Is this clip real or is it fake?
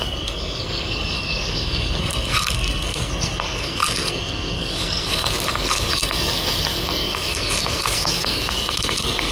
fake